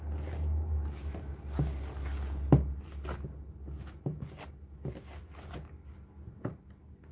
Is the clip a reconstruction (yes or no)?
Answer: no